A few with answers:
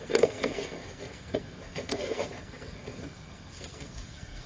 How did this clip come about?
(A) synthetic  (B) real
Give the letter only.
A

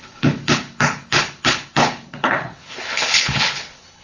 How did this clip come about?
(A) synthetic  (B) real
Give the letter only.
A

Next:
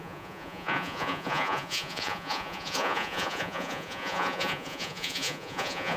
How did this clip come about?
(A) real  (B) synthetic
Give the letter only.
B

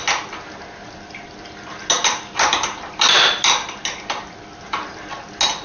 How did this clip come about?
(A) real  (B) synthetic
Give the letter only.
A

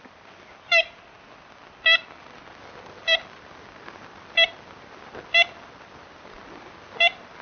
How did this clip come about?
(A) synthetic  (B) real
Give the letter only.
B